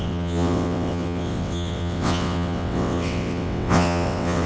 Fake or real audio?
fake